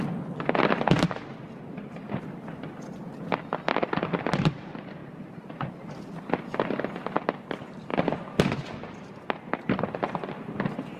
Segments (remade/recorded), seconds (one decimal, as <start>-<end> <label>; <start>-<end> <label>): 0.0-11.0 recorded